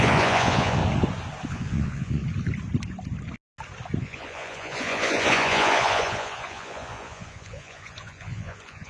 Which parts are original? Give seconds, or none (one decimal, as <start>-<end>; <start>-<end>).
0.8-1.5; 2.2-4.0